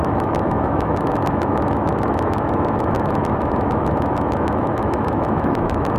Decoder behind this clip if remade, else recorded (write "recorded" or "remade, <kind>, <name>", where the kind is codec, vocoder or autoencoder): remade, autoencoder, DAC-VAE